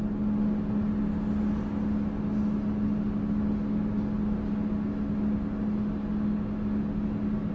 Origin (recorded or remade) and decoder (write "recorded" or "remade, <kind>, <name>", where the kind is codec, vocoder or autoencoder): recorded